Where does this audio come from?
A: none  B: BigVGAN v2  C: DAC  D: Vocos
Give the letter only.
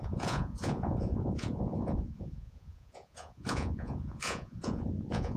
D